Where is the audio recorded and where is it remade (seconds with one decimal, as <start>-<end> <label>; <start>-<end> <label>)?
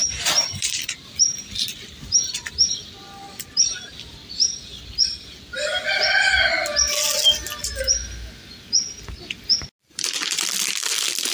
0.0-6.7 remade; 6.7-9.9 recorded; 9.9-11.3 remade